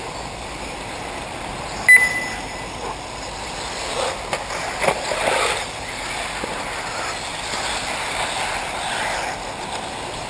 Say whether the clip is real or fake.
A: real